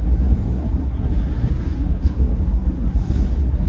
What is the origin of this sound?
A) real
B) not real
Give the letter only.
B